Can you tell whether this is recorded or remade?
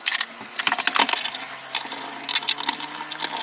recorded